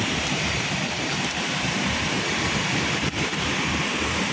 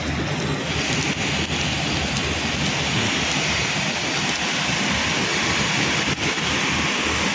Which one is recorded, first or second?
second